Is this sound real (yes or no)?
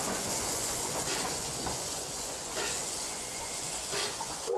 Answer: no